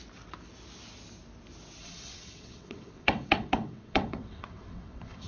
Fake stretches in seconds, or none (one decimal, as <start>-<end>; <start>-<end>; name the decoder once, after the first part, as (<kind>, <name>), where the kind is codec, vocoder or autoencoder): 1.8-5.3 (vocoder, WaveNeXt)